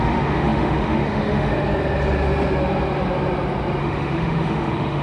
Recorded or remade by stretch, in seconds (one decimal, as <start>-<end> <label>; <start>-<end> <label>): 0.0-1.5 remade; 1.5-3.8 recorded; 3.8-5.0 remade